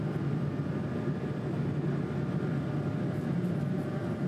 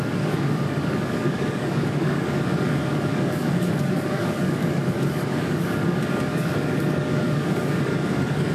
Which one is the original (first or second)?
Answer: first